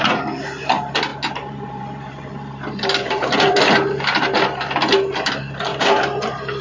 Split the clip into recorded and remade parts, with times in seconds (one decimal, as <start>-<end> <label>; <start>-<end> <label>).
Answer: 0.0-1.1 recorded; 1.1-3.6 remade; 3.6-5.7 recorded; 5.7-6.6 remade